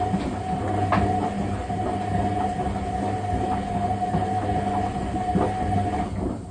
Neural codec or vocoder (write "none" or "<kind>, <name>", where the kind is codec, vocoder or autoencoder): none